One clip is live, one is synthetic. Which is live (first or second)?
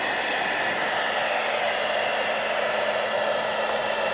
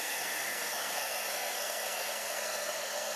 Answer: first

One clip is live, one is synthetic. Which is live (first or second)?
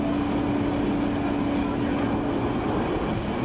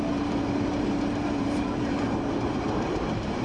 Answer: first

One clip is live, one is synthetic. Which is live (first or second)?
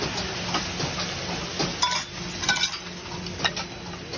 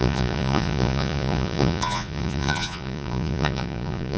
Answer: first